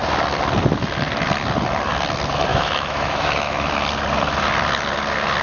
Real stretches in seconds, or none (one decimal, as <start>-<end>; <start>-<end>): 0.0-2.5; 3.7-5.4